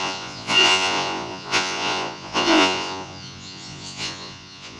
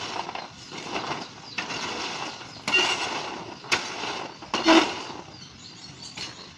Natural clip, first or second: second